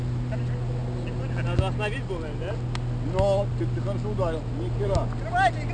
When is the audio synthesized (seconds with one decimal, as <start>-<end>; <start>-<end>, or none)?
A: none